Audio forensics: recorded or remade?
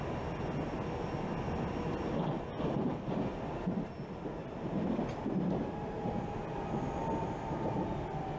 recorded